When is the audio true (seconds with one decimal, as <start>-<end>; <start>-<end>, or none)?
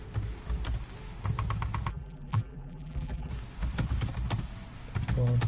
0.0-1.9; 3.3-5.5